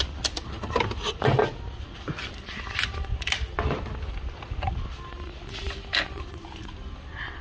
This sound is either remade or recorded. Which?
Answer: recorded